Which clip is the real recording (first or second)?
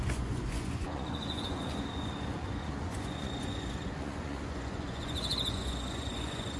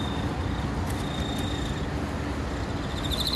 second